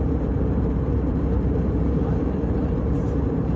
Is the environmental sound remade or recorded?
remade